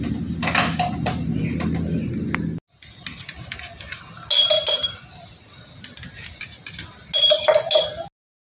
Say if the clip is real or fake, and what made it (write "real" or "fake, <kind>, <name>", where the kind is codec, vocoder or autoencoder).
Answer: real